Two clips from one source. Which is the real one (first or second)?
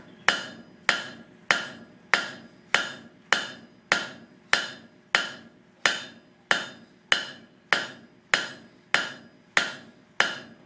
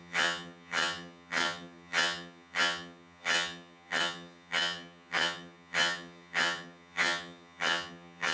first